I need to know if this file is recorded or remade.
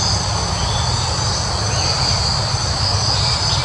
recorded